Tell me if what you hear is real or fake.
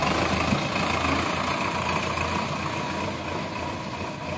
real